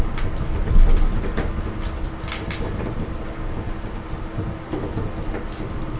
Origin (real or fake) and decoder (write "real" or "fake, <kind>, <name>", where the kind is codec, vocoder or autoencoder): real